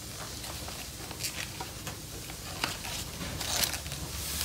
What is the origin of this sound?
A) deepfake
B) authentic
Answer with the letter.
B